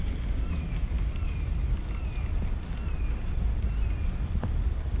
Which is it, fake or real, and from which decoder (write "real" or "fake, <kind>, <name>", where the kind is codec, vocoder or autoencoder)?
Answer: real